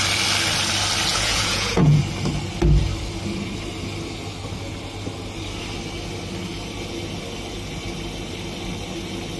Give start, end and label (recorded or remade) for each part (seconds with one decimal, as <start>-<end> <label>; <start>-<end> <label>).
0.0-1.1 recorded; 1.1-2.0 remade; 2.0-9.4 recorded